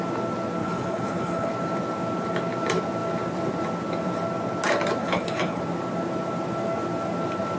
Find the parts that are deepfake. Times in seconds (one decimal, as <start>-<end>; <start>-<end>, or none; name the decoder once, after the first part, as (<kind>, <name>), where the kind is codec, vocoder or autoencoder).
0.6-1.5 (codec, HILCodec); 5.0-5.6